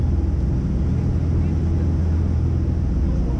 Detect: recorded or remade recorded